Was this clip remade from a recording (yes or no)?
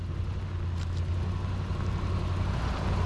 no